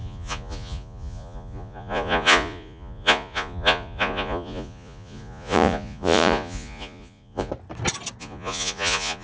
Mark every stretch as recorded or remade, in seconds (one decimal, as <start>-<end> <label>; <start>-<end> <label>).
0.0-7.5 remade; 7.5-8.2 recorded; 8.2-9.2 remade